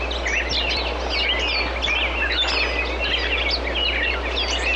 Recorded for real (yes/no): yes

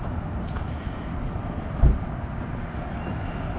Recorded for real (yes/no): yes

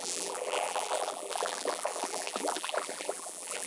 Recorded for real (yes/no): no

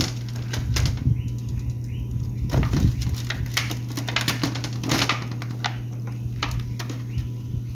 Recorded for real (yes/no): yes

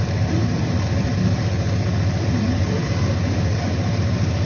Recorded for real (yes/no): no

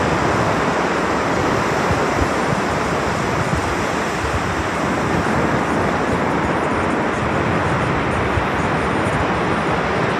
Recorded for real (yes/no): yes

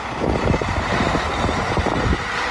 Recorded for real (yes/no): yes